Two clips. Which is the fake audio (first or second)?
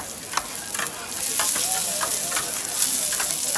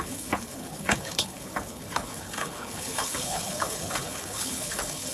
second